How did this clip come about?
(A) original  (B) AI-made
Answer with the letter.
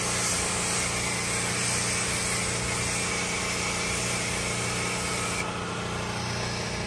A